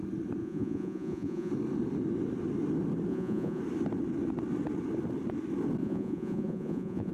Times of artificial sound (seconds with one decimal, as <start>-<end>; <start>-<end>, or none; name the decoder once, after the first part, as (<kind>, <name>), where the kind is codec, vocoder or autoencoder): 0.4-1.5 (vocoder, Vocos); 3.1-3.6; 5.8-7.1